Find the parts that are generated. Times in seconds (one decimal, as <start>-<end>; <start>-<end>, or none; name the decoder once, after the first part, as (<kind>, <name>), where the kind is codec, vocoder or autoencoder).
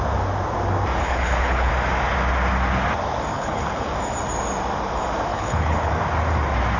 1.0-1.7 (codec, HILCodec); 3.3-3.9; 5.3-5.9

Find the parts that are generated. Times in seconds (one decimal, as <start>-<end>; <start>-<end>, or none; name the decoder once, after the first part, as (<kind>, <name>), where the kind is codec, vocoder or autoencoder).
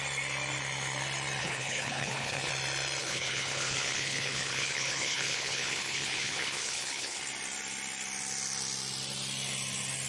1.4-2.5 (codec, HILCodec); 3.0-7.2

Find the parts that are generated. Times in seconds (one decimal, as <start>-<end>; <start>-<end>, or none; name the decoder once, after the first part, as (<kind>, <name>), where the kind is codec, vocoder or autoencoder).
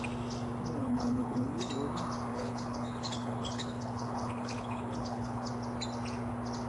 0.8-1.7 (codec, HILCodec); 2.3-5.5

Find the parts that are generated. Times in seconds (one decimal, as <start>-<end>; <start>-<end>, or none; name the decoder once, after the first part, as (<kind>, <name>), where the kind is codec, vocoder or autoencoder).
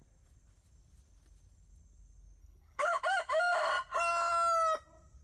2.4-3.0 (codec, HILCodec)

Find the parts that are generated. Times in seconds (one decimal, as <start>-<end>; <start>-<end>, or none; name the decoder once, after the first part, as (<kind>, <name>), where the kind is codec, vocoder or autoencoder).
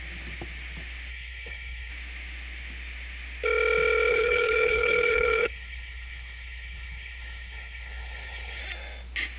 1.1-1.9 (codec, HILCodec); 4.1-8.6